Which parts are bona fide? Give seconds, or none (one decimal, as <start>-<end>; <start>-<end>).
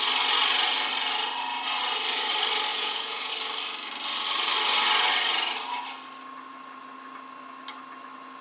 0.0-2.7; 3.3-8.4